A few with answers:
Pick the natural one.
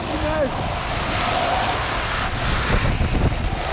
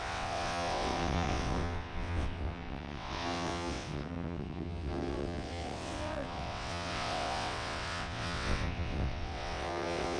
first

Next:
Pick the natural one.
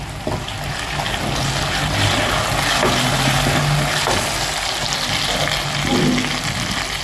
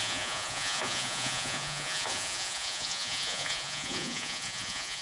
first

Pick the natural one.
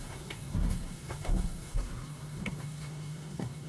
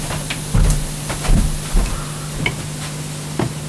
second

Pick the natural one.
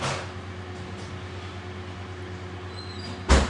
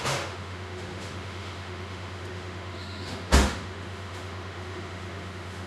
first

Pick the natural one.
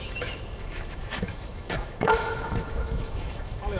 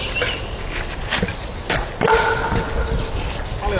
second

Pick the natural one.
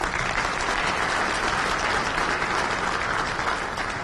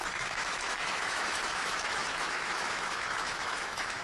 first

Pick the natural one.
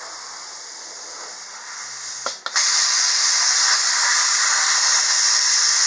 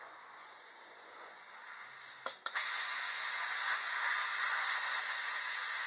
first